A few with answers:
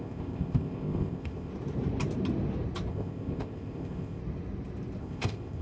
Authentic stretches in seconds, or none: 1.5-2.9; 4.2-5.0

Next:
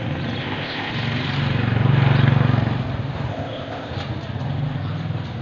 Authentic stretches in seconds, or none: 0.0-0.4; 0.9-3.3; 3.9-5.4